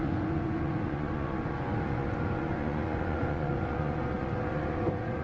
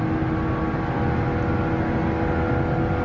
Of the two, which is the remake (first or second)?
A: first